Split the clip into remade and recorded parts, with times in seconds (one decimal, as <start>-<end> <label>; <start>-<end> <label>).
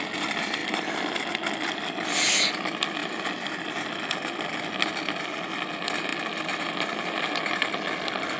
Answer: 0.0-0.6 recorded; 0.6-1.2 remade; 1.2-6.1 recorded; 6.1-6.7 remade; 6.7-8.4 recorded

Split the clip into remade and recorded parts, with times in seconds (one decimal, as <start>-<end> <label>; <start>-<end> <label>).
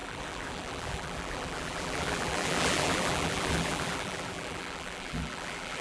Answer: 0.0-5.8 remade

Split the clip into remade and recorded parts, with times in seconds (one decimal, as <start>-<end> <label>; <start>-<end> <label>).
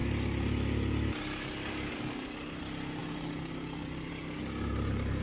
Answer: 0.0-5.2 recorded